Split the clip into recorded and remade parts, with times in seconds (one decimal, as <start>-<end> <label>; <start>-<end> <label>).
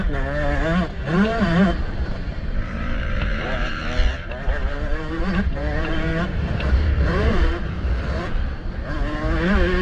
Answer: 0.0-1.1 recorded; 1.1-3.8 remade; 3.8-4.6 recorded; 4.6-7.9 remade; 7.9-9.8 recorded